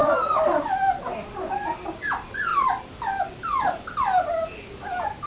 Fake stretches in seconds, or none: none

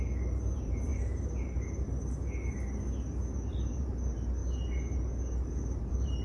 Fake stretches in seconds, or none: 0.0-0.9 (vocoder, BigVGAN v2); 3.4-4.4; 5.8-6.2

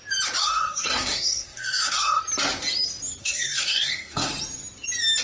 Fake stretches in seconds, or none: 0.4-2.2 (codec, SNAC); 3.2-4.3

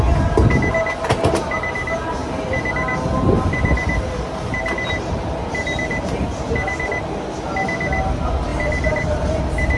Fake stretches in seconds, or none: 8.5-9.4 (vocoder, BigVGAN v2)

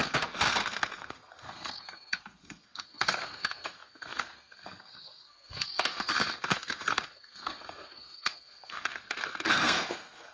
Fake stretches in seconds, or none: 0.0-10.3 (codec, SNAC)

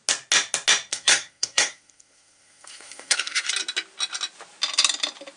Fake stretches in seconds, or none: 0.9-3.5 (codec, SNAC)